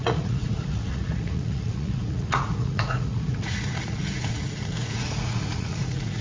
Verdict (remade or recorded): remade